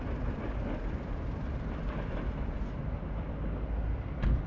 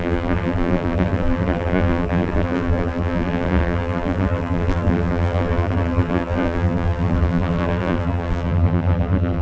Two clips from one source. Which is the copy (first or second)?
second